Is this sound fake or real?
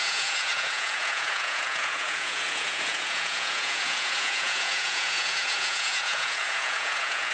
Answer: fake